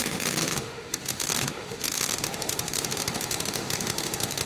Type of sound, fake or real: fake